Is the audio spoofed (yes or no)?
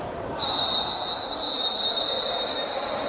yes